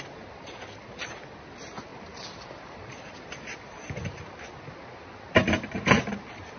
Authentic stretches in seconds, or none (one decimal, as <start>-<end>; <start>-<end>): 0.0-1.9; 2.9-5.4; 6.0-6.6